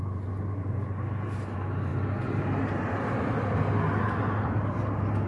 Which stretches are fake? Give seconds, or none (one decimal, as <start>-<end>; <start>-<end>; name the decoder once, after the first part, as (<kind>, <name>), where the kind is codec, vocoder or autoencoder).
none